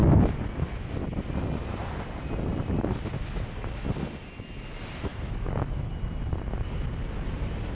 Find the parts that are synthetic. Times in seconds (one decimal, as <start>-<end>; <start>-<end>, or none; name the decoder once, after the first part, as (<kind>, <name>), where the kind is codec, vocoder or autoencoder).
5.1-5.9 (autoencoder, DAC-VAE)